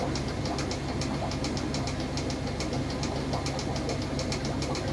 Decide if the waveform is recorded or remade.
recorded